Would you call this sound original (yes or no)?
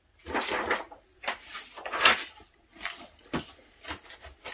no